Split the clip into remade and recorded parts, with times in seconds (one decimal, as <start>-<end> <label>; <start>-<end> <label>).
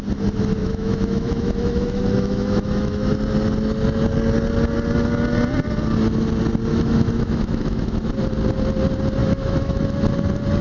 0.0-0.6 recorded; 0.6-3.2 remade; 3.2-6.7 recorded; 6.7-8.1 remade; 8.1-9.2 recorded; 9.2-9.8 remade; 9.8-10.6 recorded